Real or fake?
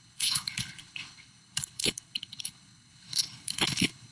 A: fake